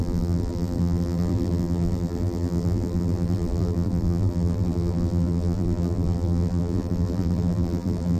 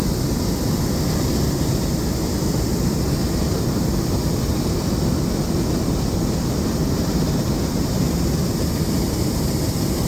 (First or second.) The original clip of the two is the second